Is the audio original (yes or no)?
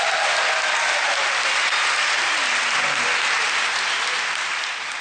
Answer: yes